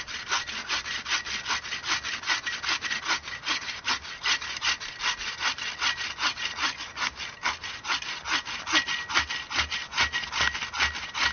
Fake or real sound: real